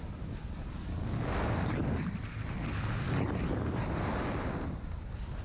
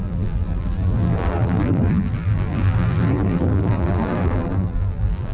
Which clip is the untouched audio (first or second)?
first